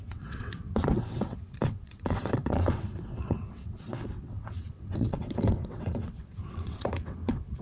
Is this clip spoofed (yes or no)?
yes